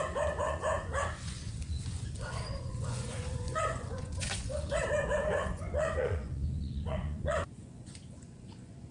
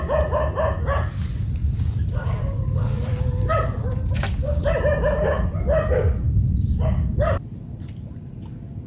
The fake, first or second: first